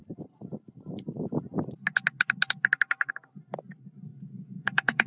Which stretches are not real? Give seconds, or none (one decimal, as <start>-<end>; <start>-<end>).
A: 4.1-5.1